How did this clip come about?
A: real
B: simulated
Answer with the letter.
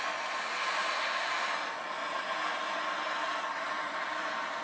A